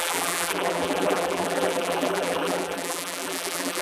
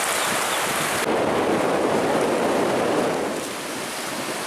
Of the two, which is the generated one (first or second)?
first